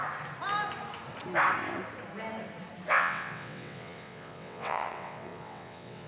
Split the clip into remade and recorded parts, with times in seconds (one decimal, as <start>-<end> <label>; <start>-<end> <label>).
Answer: 0.0-2.9 recorded; 2.9-6.1 remade